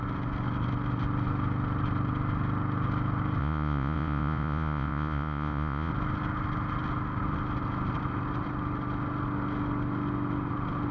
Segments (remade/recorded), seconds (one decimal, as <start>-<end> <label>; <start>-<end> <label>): 0.0-3.4 recorded; 3.4-5.9 remade; 5.9-10.9 recorded